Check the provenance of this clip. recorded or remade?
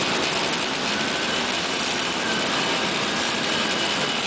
recorded